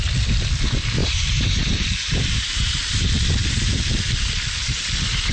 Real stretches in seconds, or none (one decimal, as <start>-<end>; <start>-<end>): 0.0-1.0; 2.9-5.3